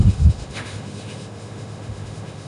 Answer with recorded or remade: remade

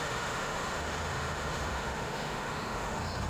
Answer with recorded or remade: remade